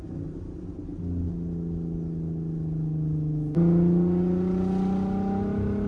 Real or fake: real